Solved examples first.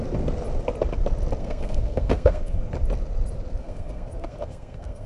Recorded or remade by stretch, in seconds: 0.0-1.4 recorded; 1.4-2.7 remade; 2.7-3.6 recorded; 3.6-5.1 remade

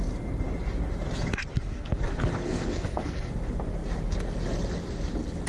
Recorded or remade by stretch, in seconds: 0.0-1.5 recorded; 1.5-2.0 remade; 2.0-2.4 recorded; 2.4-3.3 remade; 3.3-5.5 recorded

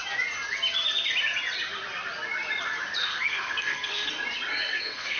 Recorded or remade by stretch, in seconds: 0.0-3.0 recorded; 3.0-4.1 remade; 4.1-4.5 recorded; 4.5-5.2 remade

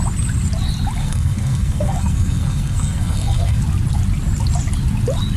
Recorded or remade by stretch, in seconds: 0.0-1.0 recorded; 1.0-3.6 remade; 3.6-5.4 recorded

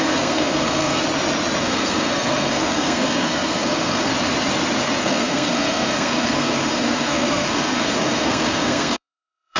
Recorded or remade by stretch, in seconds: 0.0-1.0 remade; 1.0-1.6 recorded; 1.6-4.1 remade; 4.1-5.0 recorded; 5.0-9.6 remade

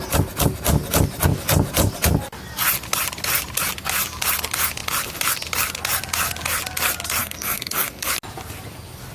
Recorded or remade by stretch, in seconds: 0.0-7.2 recorded; 7.2-8.1 remade; 8.1-9.1 recorded

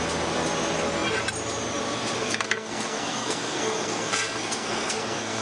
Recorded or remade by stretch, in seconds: 0.0-2.2 recorded; 2.2-5.4 remade

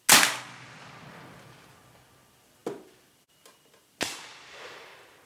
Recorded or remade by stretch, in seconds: 0.0-5.3 recorded